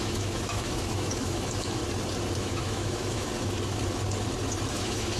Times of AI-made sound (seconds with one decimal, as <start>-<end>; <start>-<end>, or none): 0.0-1.8; 2.4-3.3; 4.7-5.2